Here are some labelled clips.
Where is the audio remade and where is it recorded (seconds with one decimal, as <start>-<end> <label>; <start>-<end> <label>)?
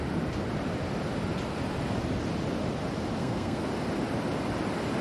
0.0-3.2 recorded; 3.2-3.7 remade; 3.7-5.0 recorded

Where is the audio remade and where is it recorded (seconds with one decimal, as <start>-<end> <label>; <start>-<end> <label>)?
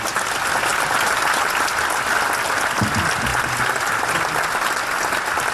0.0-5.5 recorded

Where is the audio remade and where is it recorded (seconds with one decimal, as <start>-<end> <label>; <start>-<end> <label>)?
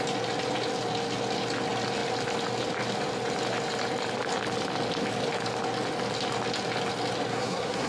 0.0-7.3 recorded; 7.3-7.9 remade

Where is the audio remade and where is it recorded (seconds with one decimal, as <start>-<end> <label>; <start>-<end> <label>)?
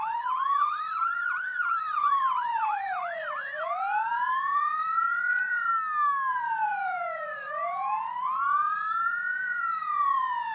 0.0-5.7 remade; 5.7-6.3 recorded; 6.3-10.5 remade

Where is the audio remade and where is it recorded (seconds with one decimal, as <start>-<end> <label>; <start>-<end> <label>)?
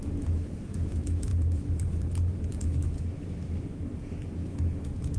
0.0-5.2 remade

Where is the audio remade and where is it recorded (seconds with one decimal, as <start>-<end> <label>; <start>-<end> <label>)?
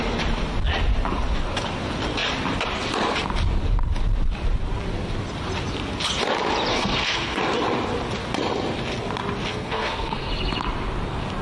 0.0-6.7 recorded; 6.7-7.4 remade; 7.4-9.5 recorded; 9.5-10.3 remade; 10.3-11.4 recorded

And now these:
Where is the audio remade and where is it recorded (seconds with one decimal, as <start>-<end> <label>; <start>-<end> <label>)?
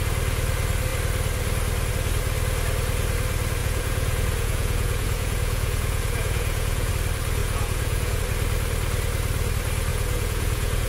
0.0-3.6 recorded; 3.6-6.9 remade; 6.9-7.4 recorded; 7.4-8.2 remade; 8.2-9.9 recorded; 9.9-10.9 remade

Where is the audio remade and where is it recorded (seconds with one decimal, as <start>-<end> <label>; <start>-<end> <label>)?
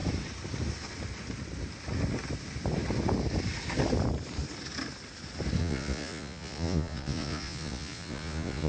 0.0-5.6 recorded; 5.6-8.7 remade